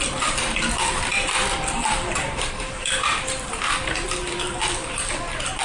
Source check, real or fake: fake